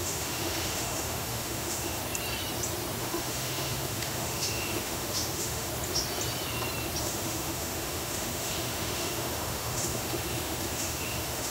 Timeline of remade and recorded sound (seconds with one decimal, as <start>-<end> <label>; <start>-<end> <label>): 0.0-2.0 remade; 2.0-3.0 recorded; 3.0-5.7 remade; 5.7-7.0 recorded; 7.0-11.5 remade